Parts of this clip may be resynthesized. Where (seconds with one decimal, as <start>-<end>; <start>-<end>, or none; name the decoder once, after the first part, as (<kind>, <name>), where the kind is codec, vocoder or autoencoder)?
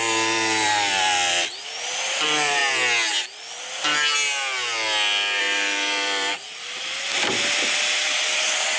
0.0-2.6 (vocoder, BigVGAN v2); 5.4-8.8